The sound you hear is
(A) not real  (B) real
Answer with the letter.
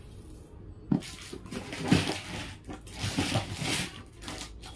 B